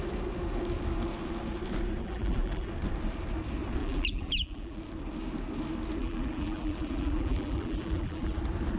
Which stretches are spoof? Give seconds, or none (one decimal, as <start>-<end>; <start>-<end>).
2.0-2.7; 3.8-4.8; 6.0-8.4